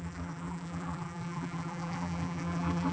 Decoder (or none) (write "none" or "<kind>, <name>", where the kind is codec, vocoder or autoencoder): vocoder, BigVGAN v2